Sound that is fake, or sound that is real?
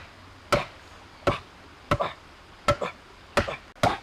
real